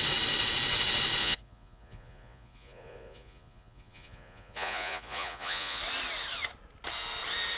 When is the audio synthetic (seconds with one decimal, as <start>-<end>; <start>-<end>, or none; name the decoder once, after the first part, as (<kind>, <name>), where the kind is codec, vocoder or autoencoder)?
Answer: 1.2-5.8 (vocoder, Vocos)